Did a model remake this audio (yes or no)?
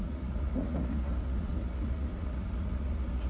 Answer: yes